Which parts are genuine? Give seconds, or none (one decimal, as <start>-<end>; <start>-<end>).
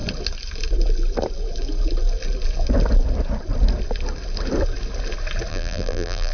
0.0-5.5